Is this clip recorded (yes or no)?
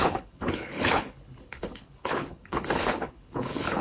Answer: no